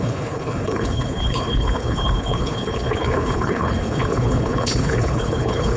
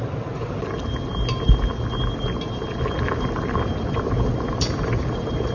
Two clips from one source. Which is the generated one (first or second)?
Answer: first